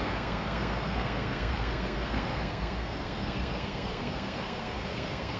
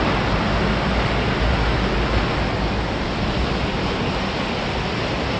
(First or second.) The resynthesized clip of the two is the first